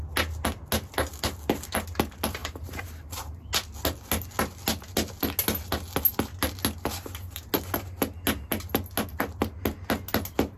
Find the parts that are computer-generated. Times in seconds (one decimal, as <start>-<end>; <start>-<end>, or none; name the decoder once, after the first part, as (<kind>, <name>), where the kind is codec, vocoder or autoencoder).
2.4-3.5 (vocoder, BigVGAN v2)